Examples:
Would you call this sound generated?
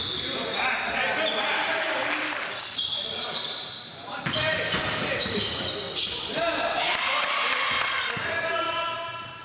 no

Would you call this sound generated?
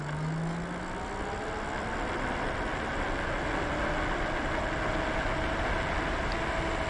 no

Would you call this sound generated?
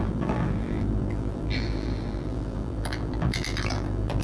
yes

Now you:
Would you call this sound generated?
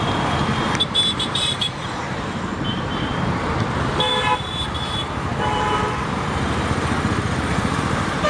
yes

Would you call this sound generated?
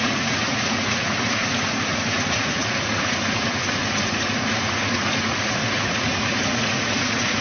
yes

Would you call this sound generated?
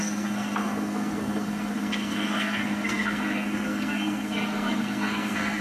yes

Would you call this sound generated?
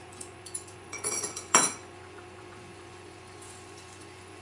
yes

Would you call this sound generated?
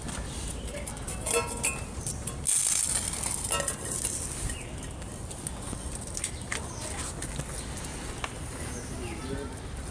no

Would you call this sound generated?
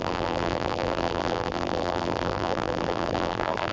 yes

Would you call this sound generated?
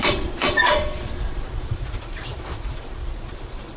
yes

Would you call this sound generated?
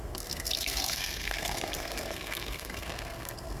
yes